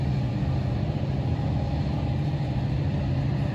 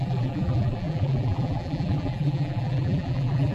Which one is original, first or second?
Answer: first